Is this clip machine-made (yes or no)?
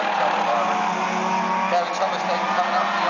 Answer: no